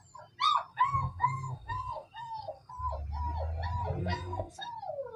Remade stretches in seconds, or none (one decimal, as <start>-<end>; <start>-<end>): 0.7-2.7; 4.0-4.7